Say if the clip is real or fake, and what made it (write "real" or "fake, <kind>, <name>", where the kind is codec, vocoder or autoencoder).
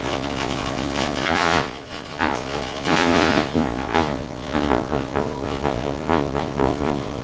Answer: fake, vocoder, Vocos